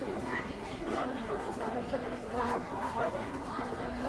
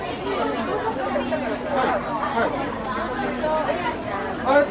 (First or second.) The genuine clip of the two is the second